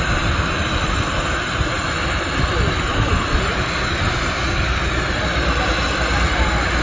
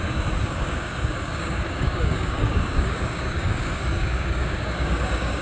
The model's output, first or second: second